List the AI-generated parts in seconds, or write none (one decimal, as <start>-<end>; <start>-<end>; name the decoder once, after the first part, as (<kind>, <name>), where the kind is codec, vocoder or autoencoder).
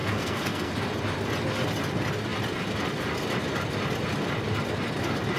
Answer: 0.0-0.7 (codec, SNAC)